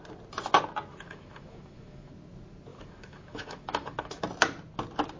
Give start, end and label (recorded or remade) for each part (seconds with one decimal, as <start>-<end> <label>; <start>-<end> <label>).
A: 0.0-0.9 recorded; 0.9-2.1 remade; 2.1-2.7 recorded; 2.7-4.2 remade; 4.2-5.2 recorded